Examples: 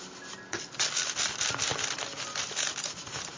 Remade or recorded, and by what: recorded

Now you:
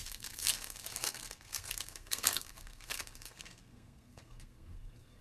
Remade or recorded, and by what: remade, codec, SNAC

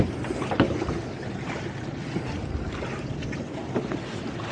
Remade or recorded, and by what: recorded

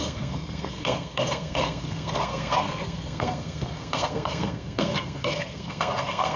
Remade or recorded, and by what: remade, codec, SNAC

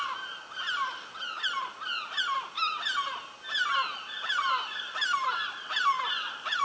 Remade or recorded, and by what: recorded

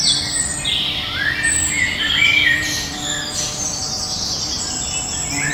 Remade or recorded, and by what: recorded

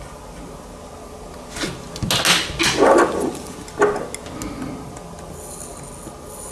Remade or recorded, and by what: recorded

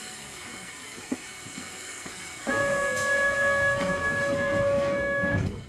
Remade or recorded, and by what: remade, codec, SNAC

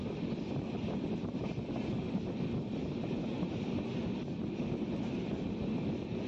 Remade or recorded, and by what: recorded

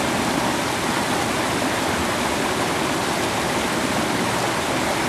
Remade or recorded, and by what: recorded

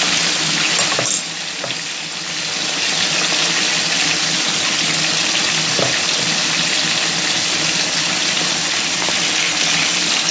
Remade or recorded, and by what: recorded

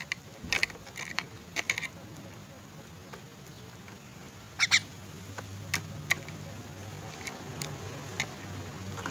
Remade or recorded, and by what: recorded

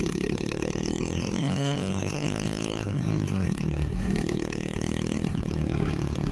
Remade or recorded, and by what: remade, codec, SNAC